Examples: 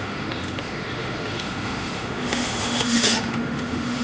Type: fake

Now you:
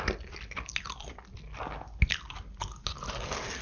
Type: real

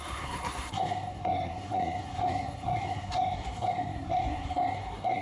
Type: fake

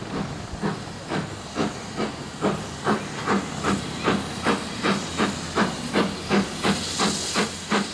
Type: real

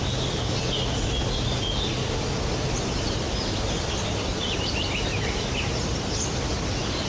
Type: real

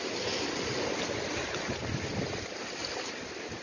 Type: real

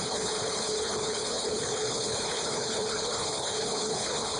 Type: fake